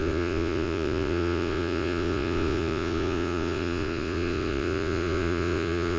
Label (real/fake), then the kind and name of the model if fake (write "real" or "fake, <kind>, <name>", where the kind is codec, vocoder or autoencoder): fake, vocoder, Vocos